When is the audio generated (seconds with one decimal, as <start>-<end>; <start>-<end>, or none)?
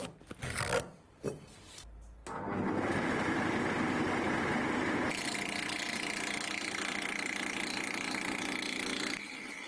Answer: none